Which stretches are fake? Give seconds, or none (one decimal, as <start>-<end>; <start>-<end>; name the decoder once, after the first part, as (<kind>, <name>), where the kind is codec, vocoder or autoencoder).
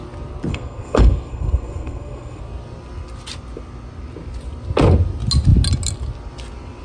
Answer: 0.5-2.4 (codec, SNAC)